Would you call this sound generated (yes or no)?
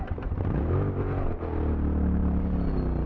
no